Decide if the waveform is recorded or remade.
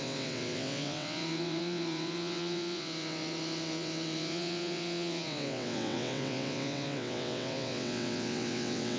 remade